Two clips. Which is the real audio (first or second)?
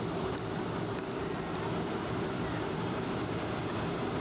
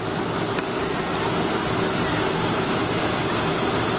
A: second